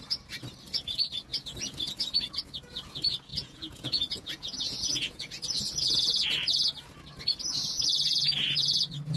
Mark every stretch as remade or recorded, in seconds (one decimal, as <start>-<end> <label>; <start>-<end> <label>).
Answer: 0.0-3.3 recorded; 3.3-5.6 remade; 5.6-9.2 recorded